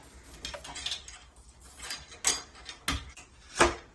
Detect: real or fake real